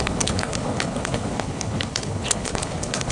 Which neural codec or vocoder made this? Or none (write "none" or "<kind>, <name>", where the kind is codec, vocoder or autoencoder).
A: codec, HILCodec